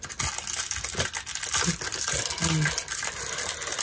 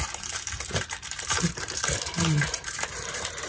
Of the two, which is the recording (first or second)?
first